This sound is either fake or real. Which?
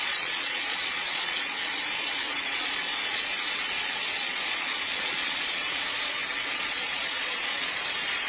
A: fake